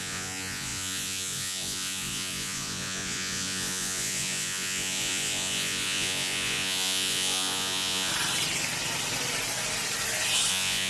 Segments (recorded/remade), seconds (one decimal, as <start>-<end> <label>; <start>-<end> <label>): 0.0-8.1 remade; 8.1-10.5 recorded; 10.5-10.9 remade